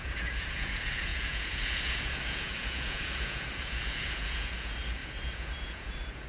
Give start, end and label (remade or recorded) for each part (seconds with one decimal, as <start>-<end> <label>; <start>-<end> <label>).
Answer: 0.0-6.3 remade